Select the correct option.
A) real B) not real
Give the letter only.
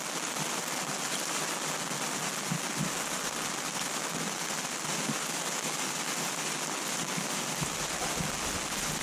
A